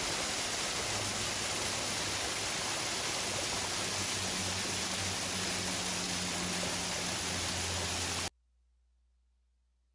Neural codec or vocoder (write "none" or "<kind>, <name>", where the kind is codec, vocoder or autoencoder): none